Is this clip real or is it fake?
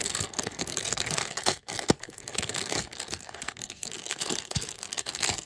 fake